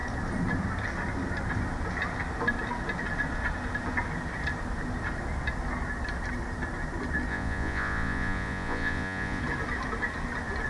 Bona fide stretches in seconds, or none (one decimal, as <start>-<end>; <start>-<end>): 0.0-7.3; 9.4-10.7